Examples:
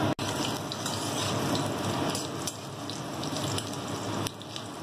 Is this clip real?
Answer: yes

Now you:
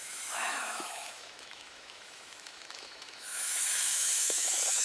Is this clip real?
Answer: no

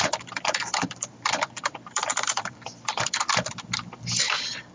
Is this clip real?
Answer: no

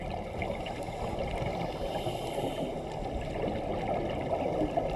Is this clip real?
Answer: yes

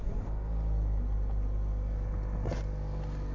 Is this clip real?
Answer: yes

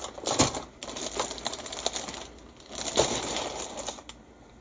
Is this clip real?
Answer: yes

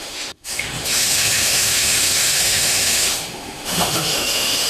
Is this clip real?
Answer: no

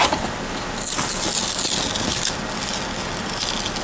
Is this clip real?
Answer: yes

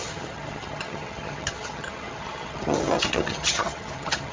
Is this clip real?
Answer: no